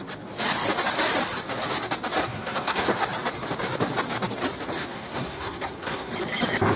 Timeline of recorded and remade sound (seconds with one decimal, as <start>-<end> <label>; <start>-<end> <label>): 0.0-2.2 recorded; 2.2-2.9 remade; 2.9-4.8 recorded; 4.8-6.1 remade; 6.1-6.8 recorded